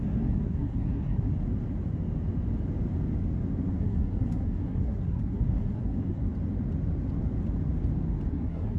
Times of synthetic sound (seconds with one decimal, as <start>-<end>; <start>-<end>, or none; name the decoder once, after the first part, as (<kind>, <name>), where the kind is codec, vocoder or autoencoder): 0.0-1.3 (codec, SNAC); 3.7-6.2; 8.3-8.8